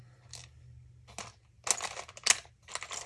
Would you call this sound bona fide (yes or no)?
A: yes